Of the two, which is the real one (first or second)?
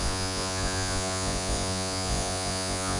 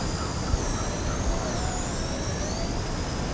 second